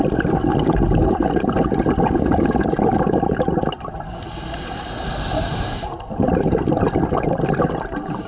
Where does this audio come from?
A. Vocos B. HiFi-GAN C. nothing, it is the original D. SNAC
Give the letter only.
C